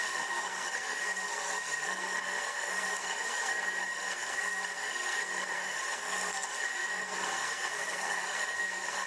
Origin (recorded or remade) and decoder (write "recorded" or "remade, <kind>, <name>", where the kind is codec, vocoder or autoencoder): remade, codec, SNAC